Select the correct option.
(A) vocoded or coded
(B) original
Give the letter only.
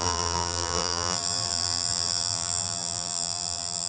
A